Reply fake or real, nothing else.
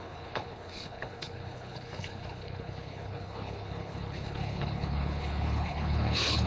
fake